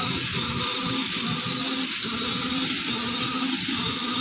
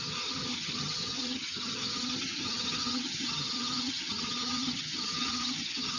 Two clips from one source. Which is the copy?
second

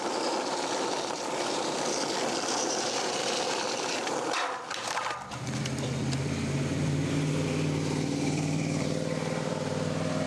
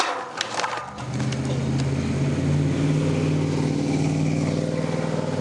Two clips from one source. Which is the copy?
first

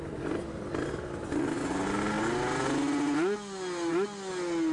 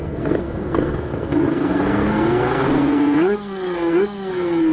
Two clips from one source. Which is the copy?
second